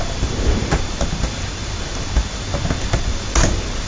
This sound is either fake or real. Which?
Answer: real